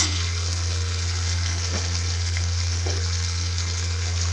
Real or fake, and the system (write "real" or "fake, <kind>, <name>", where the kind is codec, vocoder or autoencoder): fake, codec, SNAC